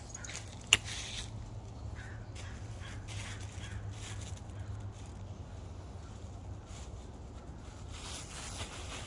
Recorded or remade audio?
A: recorded